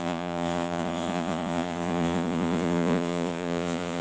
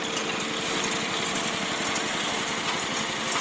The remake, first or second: first